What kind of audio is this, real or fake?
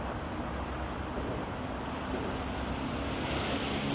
real